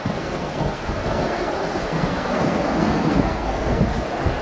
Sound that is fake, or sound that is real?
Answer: fake